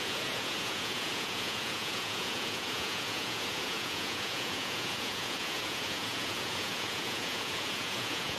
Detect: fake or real fake